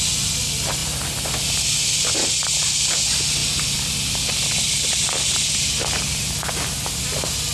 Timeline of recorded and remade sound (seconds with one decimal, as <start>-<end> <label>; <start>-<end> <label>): 0.0-7.5 recorded